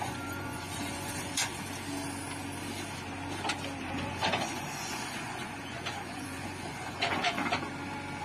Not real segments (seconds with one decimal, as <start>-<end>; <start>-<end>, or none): 0.0-1.6; 3.9-7.4